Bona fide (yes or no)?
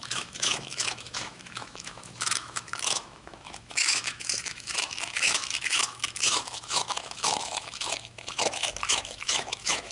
no